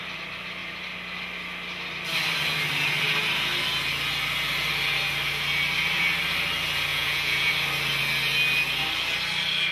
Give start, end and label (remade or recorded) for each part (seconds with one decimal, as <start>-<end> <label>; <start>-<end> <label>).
0.0-6.9 recorded; 6.9-7.5 remade; 7.5-9.7 recorded